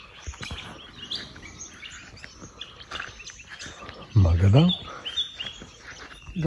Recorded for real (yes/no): yes